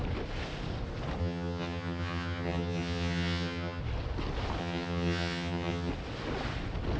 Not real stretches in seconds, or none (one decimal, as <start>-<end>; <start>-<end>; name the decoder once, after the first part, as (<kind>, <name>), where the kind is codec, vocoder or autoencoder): 1.2-3.8 (vocoder, HiFi-GAN); 4.6-5.9